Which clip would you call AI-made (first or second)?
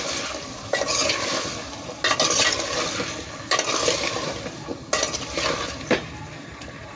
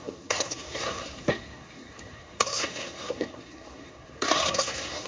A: second